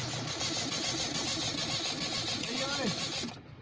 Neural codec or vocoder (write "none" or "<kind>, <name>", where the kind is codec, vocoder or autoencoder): none